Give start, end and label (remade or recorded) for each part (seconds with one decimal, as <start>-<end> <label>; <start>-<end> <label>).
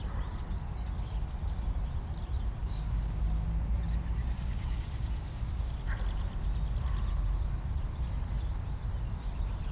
0.0-2.6 recorded; 2.6-3.2 remade; 3.2-4.2 recorded; 4.2-5.7 remade; 5.7-9.7 recorded